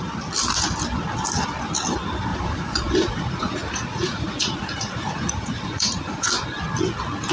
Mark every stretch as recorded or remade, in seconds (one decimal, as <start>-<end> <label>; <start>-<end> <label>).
0.0-2.3 recorded; 2.3-6.3 remade; 6.3-7.3 recorded